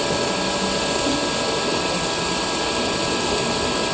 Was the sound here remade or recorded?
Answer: recorded